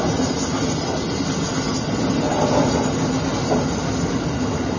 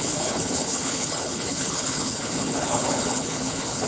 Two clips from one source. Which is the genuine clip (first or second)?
first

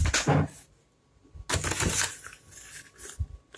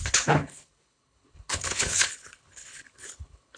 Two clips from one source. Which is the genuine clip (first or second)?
first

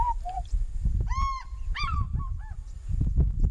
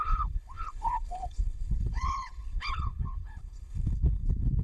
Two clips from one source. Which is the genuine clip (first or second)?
first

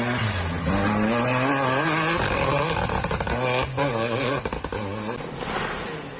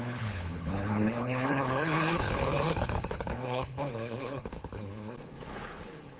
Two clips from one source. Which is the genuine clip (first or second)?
first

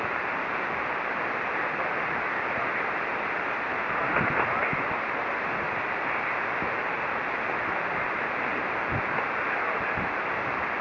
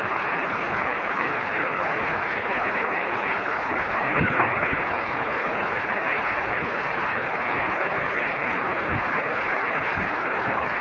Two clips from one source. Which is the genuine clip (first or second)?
first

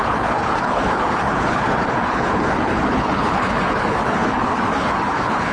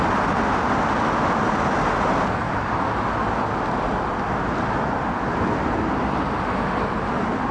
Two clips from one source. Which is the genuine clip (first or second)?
second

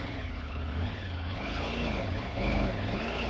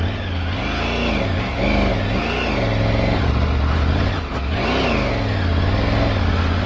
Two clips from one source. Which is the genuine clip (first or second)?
second